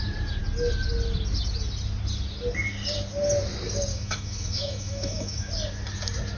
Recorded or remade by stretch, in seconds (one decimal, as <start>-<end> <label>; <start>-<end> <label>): 0.0-3.9 recorded; 3.9-5.5 remade; 5.5-6.4 recorded